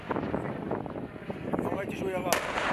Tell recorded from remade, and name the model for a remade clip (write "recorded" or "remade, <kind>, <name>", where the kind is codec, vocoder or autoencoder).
recorded